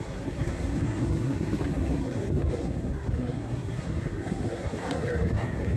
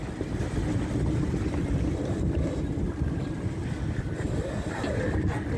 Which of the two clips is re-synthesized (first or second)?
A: first